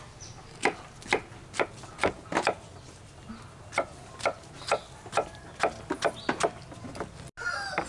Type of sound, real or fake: real